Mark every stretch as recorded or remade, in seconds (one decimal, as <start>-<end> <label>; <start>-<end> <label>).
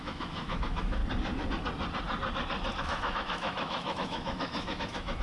0.0-1.0 remade; 1.0-2.8 recorded; 2.8-5.2 remade